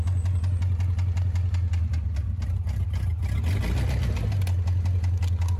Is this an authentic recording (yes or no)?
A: yes